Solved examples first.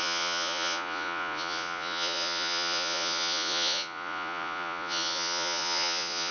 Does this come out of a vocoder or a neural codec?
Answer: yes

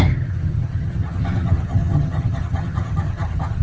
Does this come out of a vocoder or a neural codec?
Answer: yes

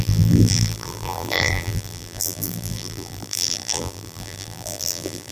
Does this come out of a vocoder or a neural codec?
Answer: yes